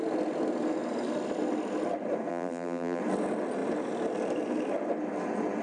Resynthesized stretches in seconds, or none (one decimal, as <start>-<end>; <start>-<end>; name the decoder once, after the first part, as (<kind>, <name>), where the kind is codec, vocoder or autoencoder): 2.3-3.0 (vocoder, BigVGAN v2)

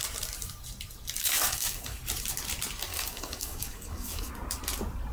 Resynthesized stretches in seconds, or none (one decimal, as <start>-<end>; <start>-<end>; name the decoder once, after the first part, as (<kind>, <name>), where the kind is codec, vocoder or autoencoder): 1.2-2.0 (codec, DAC); 2.9-4.3

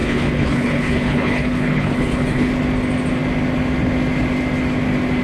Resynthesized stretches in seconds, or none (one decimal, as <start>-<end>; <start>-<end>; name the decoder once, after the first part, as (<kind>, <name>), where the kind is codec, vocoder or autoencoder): 0.0-2.5 (codec, HILCodec)

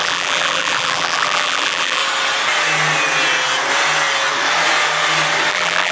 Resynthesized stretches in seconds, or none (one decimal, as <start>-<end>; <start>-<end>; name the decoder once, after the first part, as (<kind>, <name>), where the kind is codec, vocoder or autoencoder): 0.0-2.0 (vocoder, BigVGAN v2); 5.5-5.9